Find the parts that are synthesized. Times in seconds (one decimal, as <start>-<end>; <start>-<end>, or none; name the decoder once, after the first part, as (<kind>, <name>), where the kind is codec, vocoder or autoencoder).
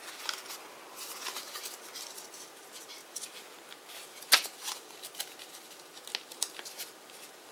none